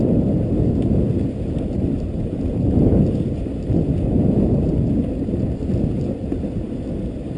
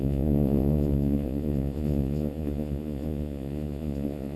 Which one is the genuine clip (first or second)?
first